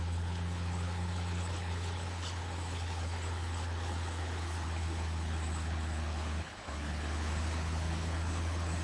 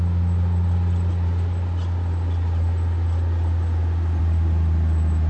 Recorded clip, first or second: second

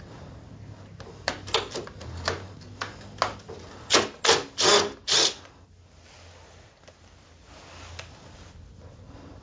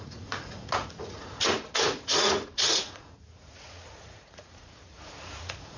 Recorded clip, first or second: first